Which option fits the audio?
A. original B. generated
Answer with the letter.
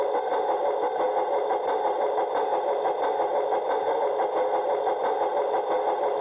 A